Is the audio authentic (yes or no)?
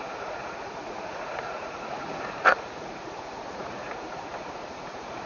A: no